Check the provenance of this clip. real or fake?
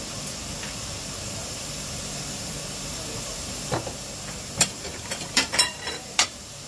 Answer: fake